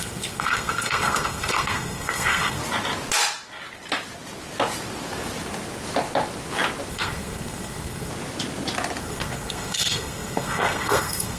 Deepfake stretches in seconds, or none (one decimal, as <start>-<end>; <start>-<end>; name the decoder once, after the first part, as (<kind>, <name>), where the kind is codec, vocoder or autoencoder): 0.0-2.6 (codec, SNAC); 6.9-8.1; 9.0-11.4